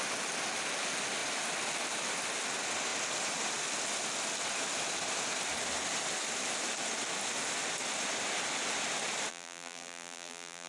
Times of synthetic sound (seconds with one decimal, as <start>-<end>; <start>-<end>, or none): 9.3-10.7